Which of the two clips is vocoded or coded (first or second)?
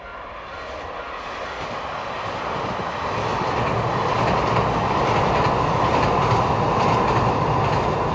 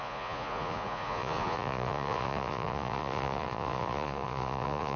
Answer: second